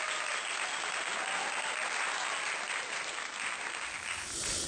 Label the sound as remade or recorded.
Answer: recorded